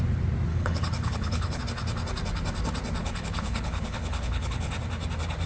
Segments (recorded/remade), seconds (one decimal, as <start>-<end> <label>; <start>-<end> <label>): 0.0-0.5 recorded; 0.5-1.6 remade; 1.6-3.0 recorded; 3.0-4.7 remade; 4.7-5.5 recorded